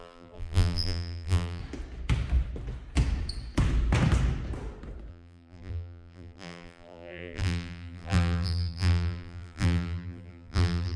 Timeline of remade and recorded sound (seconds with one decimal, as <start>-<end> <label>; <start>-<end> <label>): 0.0-1.6 remade; 1.6-5.1 recorded; 5.1-11.0 remade